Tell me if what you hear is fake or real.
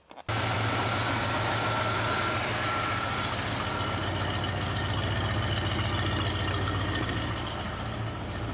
real